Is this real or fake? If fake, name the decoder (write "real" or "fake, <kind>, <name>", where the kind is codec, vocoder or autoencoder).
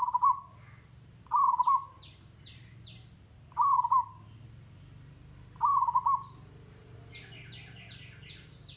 real